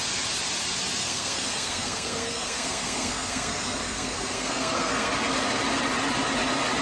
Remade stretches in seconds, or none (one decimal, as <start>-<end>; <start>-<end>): 1.0-5.1